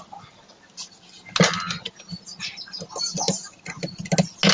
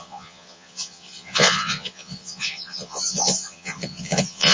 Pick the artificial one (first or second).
second